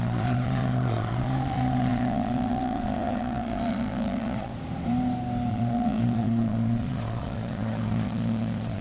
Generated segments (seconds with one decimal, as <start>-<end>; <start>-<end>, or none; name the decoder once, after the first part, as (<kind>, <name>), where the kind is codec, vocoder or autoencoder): 0.0-4.5 (vocoder, Vocos); 5.5-8.8